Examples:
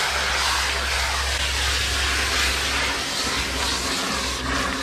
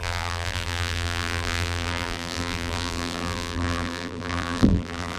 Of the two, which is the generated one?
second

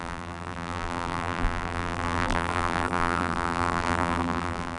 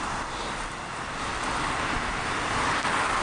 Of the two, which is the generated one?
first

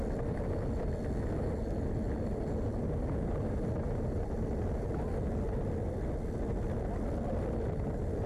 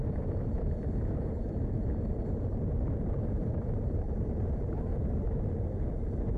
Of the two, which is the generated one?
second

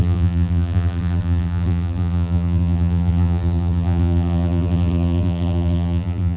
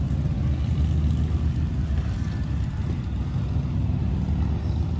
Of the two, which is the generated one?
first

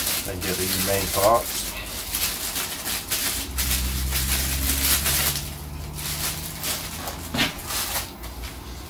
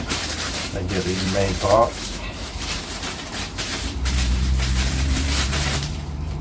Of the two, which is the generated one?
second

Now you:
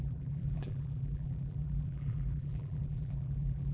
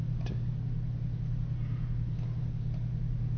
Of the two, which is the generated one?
first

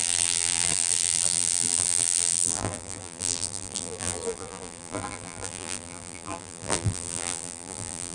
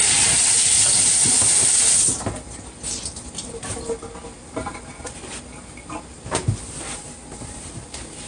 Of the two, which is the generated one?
first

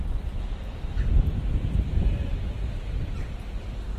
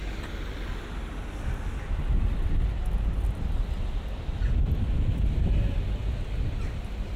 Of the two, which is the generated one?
first